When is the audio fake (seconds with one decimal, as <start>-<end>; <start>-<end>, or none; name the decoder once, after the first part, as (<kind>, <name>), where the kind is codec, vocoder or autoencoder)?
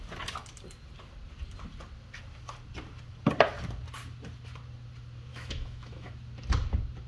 5.3-6.1 (autoencoder, DAC-VAE)